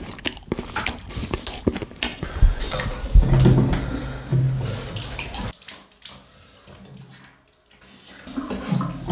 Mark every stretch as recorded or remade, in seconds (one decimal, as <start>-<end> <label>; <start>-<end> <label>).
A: 0.0-2.1 recorded; 2.1-2.8 remade; 2.8-9.1 recorded

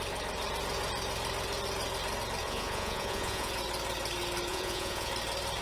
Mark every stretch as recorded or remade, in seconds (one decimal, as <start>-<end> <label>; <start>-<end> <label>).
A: 0.0-2.4 recorded; 2.4-3.5 remade; 3.5-4.5 recorded; 4.5-5.1 remade; 5.1-5.6 recorded

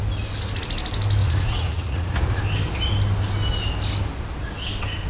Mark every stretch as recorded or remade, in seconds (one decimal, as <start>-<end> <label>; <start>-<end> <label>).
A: 0.0-1.2 recorded; 1.2-2.4 remade; 2.4-5.1 recorded

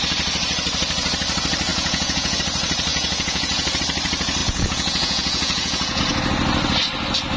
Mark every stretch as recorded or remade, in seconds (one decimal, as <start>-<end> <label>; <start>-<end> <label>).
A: 0.0-1.7 recorded; 1.7-2.4 remade; 2.4-2.9 recorded; 2.9-3.8 remade; 3.8-4.4 recorded; 4.4-6.0 remade; 6.0-7.4 recorded

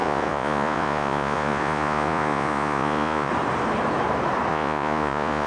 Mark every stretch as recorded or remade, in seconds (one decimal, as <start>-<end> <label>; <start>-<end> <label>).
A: 0.0-3.3 remade; 3.3-4.5 recorded; 4.5-5.5 remade